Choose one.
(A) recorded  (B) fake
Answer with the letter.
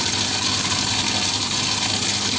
A